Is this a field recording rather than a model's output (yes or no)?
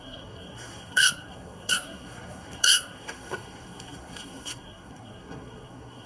no